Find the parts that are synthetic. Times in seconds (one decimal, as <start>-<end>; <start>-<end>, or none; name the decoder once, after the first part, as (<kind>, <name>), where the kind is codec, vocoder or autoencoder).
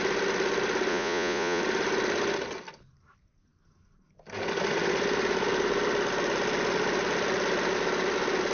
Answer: 0.9-1.6 (vocoder, Vocos)